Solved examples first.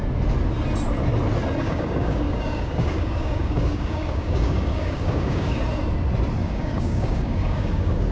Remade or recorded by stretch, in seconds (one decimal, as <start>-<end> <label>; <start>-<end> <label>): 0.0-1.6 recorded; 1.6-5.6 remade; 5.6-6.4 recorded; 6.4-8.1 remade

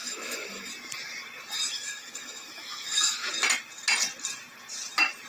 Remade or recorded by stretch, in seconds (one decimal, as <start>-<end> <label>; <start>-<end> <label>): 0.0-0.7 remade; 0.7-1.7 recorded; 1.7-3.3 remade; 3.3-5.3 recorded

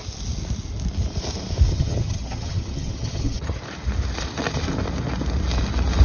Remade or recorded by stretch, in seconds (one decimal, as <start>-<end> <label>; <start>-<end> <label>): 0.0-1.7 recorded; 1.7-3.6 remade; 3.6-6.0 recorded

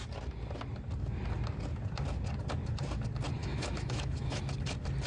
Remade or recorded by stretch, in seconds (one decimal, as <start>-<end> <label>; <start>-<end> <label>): 0.0-3.4 recorded; 3.4-4.4 remade; 4.4-5.1 recorded

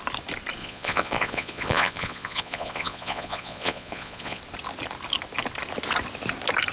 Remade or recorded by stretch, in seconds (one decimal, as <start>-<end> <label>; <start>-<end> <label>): 0.0-0.6 recorded; 0.6-4.4 remade; 4.4-6.7 recorded

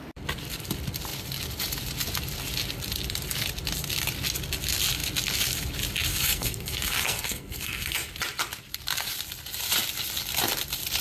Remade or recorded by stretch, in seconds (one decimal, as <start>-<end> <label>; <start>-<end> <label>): 0.0-6.1 recorded; 6.1-8.1 remade; 8.1-11.0 recorded

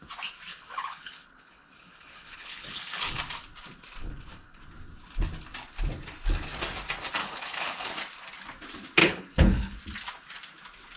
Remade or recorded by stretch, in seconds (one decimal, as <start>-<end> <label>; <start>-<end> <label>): 0.0-0.5 recorded; 0.5-3.2 remade; 3.2-4.0 recorded; 4.0-4.6 remade; 4.6-7.2 recorded; 7.2-7.9 remade; 7.9-9.0 recorded; 9.0-9.8 remade; 9.8-11.0 recorded